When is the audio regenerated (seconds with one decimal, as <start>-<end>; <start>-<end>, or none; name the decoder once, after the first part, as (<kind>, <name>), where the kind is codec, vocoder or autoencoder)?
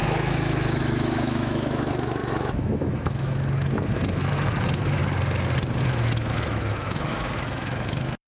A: 0.0-5.0 (autoencoder, DAC-VAE); 5.8-8.3